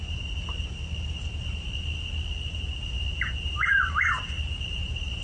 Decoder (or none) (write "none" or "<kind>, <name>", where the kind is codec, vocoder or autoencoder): none